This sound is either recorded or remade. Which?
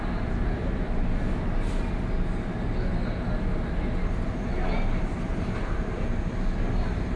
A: recorded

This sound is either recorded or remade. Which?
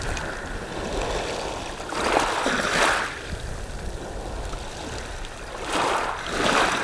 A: recorded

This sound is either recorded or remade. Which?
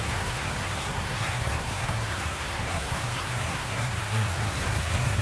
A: remade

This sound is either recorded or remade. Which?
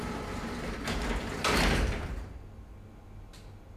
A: recorded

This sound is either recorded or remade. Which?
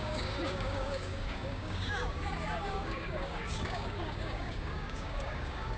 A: remade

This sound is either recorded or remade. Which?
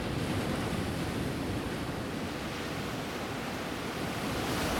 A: recorded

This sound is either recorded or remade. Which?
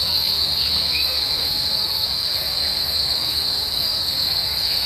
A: remade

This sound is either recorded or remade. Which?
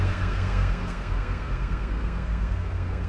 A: remade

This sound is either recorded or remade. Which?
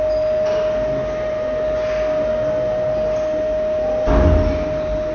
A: recorded